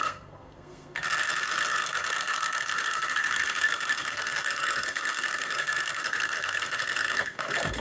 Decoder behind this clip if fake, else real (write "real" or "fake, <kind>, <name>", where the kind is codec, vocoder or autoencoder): fake, codec, SNAC